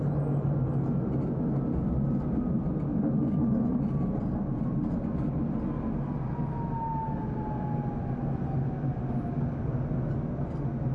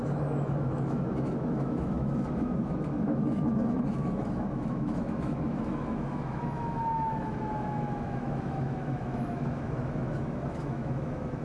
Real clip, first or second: first